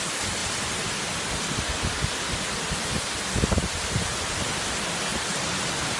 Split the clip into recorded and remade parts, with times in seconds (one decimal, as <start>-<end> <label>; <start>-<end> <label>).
0.0-5.1 recorded; 5.1-6.0 remade

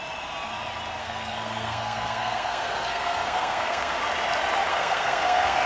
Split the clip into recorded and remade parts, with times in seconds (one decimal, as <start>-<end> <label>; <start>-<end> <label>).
0.0-1.0 recorded; 1.0-4.0 remade; 4.0-4.7 recorded; 4.7-5.7 remade

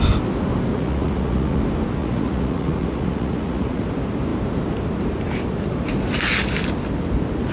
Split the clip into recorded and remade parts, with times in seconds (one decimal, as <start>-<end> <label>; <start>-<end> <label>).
0.0-0.7 recorded; 0.7-1.6 remade; 1.6-2.0 recorded; 2.0-3.8 remade; 3.8-7.5 recorded